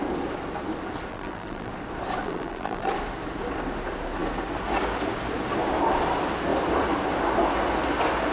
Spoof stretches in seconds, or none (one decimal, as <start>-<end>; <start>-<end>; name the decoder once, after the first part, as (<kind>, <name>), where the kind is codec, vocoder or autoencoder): 1.1-1.7 (vocoder, BigVGAN v2); 2.2-2.9